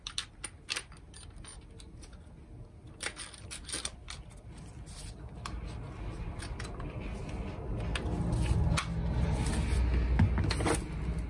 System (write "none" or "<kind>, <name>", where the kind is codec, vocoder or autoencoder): none